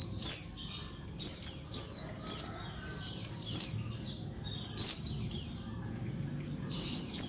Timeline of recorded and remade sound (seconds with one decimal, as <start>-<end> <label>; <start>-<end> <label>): 0.0-7.3 recorded